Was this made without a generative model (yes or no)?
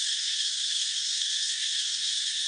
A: no